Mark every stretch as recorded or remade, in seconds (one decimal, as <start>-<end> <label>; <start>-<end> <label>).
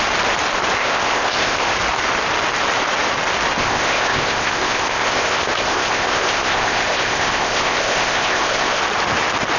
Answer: 0.0-0.8 recorded; 0.8-1.7 remade; 1.7-3.6 recorded; 3.6-8.8 remade; 8.8-9.6 recorded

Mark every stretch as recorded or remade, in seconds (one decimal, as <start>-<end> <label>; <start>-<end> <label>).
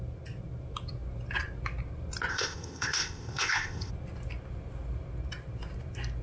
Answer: 0.0-2.3 recorded; 2.3-3.9 remade; 3.9-6.2 recorded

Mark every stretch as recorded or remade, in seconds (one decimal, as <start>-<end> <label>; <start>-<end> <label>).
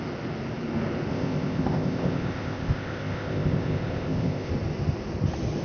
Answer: 0.0-1.1 recorded; 1.1-4.5 remade; 4.5-5.6 recorded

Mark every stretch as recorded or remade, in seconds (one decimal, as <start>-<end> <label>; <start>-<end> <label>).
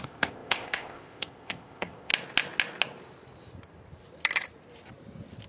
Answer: 0.0-2.1 remade; 2.1-5.5 recorded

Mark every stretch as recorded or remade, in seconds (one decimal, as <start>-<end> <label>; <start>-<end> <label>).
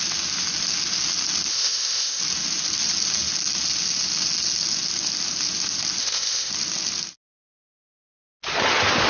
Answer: 0.0-1.5 recorded; 1.5-2.2 remade; 2.2-6.0 recorded; 6.0-6.5 remade; 6.5-9.1 recorded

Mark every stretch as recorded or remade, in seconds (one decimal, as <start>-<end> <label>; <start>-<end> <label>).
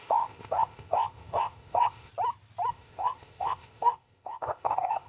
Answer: 0.0-2.1 remade; 2.1-2.7 recorded; 2.7-5.1 remade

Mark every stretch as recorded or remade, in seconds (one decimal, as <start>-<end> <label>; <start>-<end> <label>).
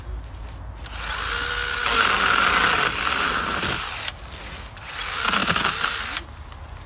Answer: 0.0-6.9 recorded